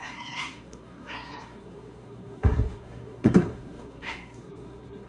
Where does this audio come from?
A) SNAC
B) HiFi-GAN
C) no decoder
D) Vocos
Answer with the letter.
A